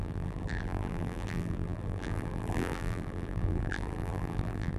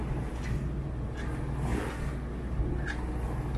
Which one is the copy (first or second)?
first